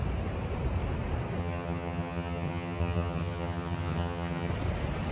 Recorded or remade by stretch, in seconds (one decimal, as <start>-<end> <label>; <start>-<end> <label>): 0.0-1.4 recorded; 1.4-4.5 remade; 4.5-5.1 recorded